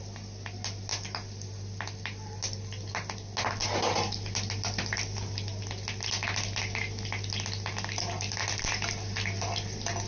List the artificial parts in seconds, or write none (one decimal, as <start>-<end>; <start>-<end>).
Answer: none